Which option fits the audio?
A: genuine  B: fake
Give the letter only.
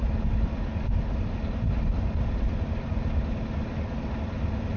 A